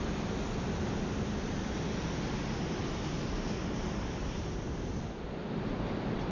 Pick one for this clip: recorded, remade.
recorded